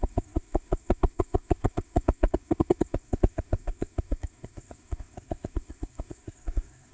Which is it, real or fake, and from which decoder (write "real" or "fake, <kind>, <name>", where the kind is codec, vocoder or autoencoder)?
fake, codec, SNAC